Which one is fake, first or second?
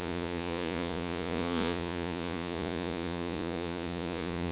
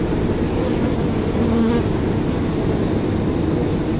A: first